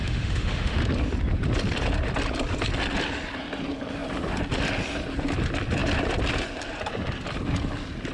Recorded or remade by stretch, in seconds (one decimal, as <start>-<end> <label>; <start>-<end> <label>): 0.0-0.8 remade; 0.8-8.1 recorded